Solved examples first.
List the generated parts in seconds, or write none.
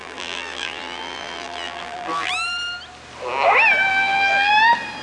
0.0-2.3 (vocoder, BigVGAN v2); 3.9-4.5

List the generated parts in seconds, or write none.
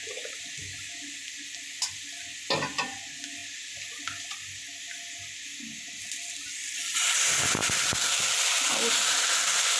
none